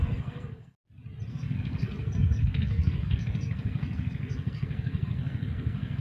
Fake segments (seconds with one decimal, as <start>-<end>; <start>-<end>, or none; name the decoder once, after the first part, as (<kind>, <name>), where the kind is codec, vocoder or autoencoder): 0.0-0.8 (codec, SNAC); 1.3-6.0